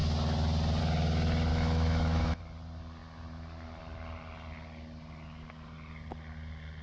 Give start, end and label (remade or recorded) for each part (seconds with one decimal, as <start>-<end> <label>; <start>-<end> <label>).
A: 0.0-1.5 recorded; 1.5-2.4 remade; 2.4-6.8 recorded